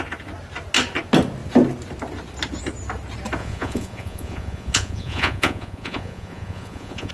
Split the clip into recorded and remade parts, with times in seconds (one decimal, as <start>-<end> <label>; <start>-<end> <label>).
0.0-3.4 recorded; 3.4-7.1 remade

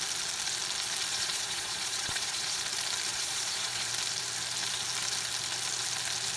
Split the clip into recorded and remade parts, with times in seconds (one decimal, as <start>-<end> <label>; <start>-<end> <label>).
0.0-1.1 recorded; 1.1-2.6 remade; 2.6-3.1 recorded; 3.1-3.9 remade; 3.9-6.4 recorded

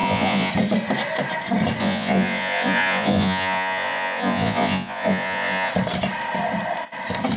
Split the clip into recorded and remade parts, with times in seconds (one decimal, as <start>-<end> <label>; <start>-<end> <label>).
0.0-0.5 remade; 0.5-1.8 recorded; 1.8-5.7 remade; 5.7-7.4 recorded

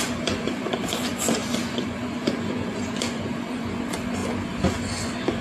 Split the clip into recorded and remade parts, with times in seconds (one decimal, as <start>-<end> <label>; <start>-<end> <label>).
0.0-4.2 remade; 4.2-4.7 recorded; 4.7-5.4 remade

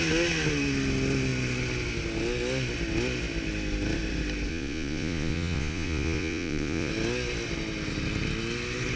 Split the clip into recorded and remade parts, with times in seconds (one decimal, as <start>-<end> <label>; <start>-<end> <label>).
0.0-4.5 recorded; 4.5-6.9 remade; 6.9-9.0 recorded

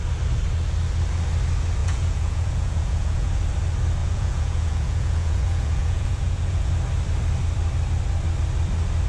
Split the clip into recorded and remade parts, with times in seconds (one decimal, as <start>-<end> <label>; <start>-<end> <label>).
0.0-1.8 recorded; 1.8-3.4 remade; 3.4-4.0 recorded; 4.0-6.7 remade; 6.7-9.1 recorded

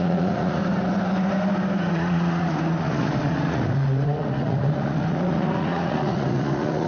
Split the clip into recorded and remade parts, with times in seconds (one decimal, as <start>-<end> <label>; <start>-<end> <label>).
0.0-0.6 remade; 0.6-1.9 recorded; 1.9-6.9 remade

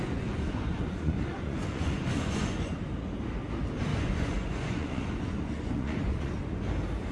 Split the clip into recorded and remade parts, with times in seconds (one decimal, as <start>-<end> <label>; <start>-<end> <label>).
0.0-2.7 remade; 2.7-3.9 recorded; 3.9-6.3 remade; 6.3-7.1 recorded